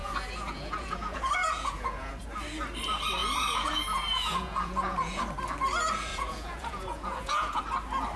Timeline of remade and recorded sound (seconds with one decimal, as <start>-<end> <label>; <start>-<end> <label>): 0.0-2.1 remade; 2.1-3.2 recorded; 3.2-5.2 remade; 5.2-6.1 recorded; 6.1-7.6 remade; 7.6-8.2 recorded